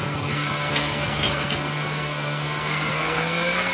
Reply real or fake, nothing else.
fake